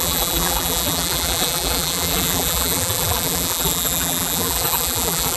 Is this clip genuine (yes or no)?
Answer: no